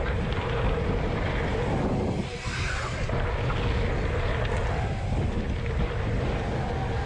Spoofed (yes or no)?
no